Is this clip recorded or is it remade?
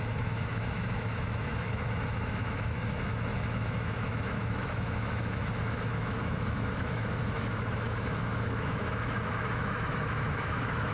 remade